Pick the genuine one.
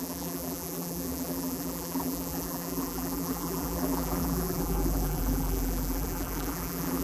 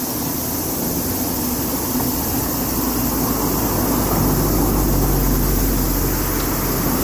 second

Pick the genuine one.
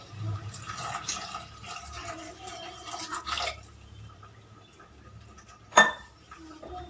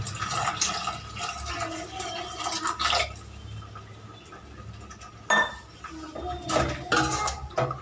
second